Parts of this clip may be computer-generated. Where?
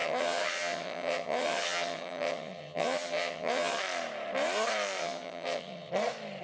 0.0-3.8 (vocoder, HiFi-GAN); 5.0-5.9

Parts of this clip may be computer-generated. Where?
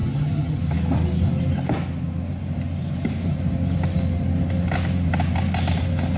0.0-0.6 (vocoder, HiFi-GAN)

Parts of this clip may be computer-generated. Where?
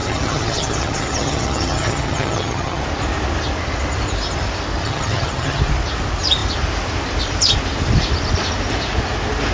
0.0-2.8 (vocoder, HiFi-GAN); 4.8-5.6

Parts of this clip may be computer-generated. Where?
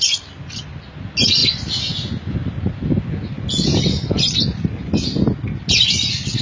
none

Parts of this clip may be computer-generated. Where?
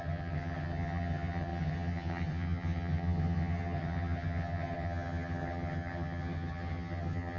0.0-7.4 (vocoder, HiFi-GAN)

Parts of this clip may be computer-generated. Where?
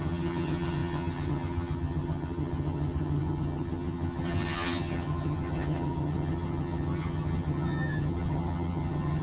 0.0-9.2 (vocoder, HiFi-GAN)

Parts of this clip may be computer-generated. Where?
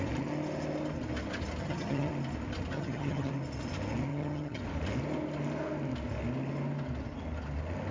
1.6-2.1 (vocoder, HiFi-GAN); 2.7-3.3; 4.1-4.6